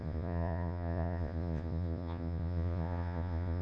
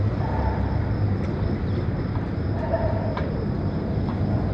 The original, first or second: second